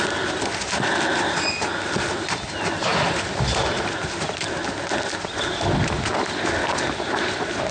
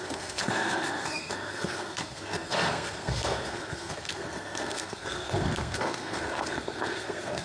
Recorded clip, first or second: first